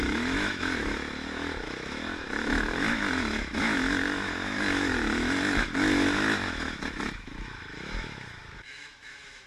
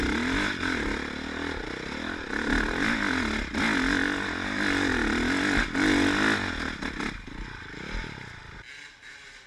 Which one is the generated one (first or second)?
first